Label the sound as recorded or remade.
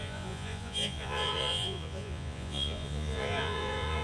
remade